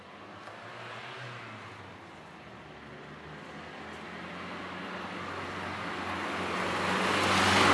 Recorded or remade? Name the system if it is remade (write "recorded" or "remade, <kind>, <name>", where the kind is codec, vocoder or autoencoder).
recorded